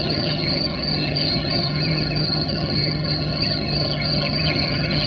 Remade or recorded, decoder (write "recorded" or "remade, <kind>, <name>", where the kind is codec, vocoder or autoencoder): remade, vocoder, HiFi-GAN